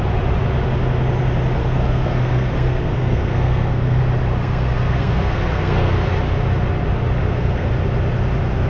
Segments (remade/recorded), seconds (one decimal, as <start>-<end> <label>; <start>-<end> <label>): 0.0-1.6 recorded; 1.6-4.0 remade; 4.0-4.4 recorded; 4.4-5.9 remade; 5.9-7.2 recorded; 7.2-7.7 remade; 7.7-8.7 recorded